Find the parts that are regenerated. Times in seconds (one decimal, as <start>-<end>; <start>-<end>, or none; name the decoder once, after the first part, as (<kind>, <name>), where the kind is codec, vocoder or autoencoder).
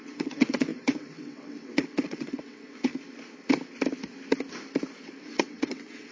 0.0-2.9 (vocoder, WaveNeXt); 5.2-6.1